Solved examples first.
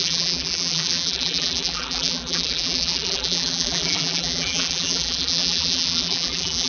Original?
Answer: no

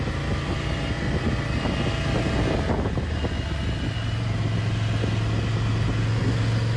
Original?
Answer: yes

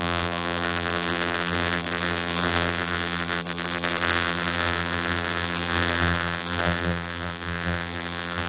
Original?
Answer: no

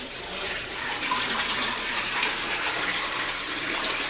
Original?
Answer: no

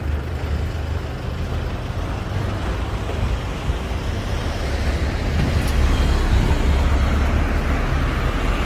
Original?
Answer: yes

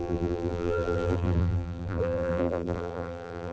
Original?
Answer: no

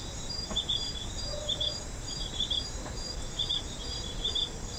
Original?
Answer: no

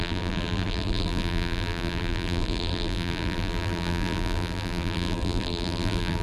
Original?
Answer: no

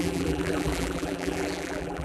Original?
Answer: no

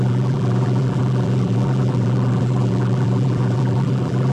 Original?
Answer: no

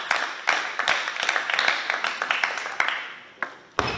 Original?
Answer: yes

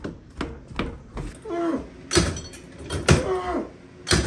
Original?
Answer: yes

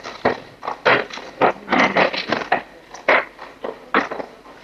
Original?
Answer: yes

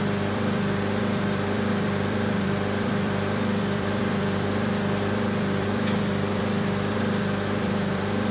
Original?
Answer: no